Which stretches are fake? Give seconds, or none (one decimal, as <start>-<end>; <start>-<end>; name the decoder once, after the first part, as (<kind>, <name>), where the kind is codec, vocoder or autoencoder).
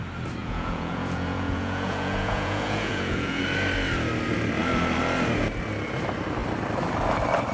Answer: 0.4-3.4 (vocoder, Vocos)